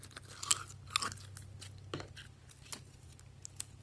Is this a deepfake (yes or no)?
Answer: no